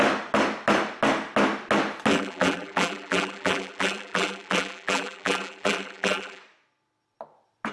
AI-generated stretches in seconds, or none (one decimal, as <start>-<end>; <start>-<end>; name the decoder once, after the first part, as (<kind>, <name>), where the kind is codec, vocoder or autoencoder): 2.1-6.4 (vocoder, BigVGAN v2)